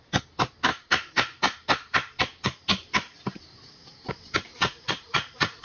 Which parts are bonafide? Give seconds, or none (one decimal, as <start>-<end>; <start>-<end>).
0.0-4.5